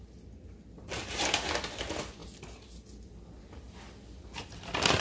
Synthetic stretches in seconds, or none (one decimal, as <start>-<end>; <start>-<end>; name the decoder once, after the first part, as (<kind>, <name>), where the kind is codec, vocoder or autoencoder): none